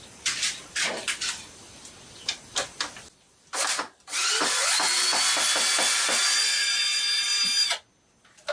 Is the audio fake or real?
real